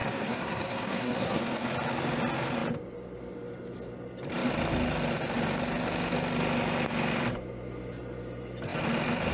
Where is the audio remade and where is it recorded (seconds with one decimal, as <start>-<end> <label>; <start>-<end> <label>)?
0.0-1.4 remade; 1.4-9.3 recorded